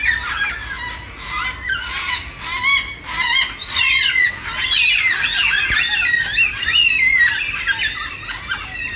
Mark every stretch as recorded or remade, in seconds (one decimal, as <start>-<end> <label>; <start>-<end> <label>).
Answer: 0.0-1.8 recorded; 1.8-2.3 remade; 2.3-3.6 recorded; 3.6-4.3 remade; 4.3-9.0 recorded